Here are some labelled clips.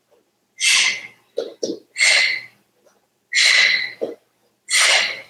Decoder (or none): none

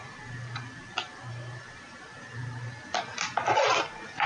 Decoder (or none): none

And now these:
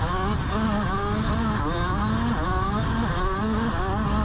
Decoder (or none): none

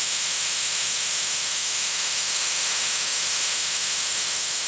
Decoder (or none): autoencoder, DAC-VAE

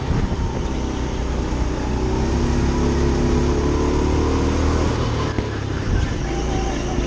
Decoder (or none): none